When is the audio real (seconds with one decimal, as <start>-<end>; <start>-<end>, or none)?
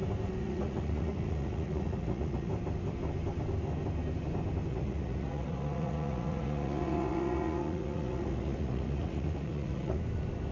0.0-0.4; 2.5-4.7; 10.0-10.5